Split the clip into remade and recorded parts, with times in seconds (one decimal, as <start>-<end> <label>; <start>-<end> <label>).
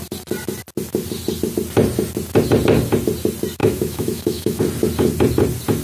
0.0-3.6 recorded; 3.6-4.6 remade; 4.6-5.8 recorded